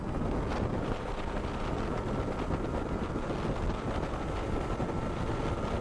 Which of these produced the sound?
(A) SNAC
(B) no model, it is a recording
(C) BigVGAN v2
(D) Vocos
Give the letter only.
B